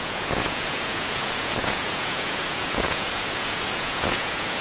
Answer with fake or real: fake